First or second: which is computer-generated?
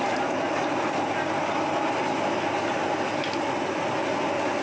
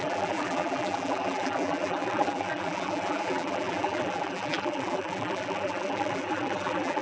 second